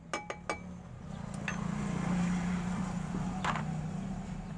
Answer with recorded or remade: recorded